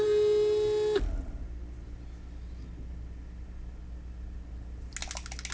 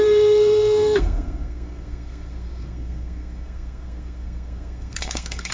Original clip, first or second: first